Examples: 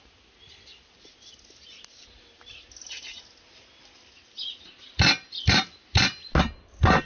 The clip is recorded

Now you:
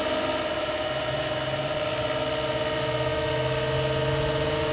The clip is recorded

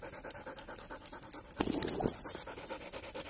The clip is recorded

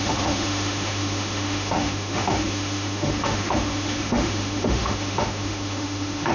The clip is remade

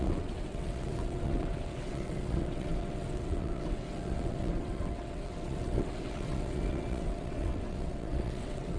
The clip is remade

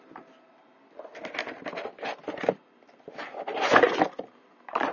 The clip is recorded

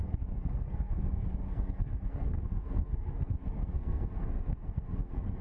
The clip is remade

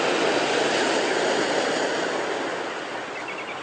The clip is recorded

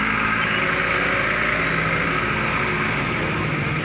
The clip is recorded